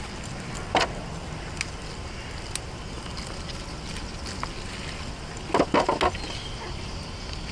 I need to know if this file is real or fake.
real